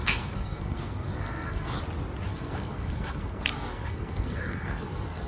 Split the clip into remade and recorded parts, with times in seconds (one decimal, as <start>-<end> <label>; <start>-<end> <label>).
0.0-1.8 remade; 1.8-2.3 recorded; 2.3-5.3 remade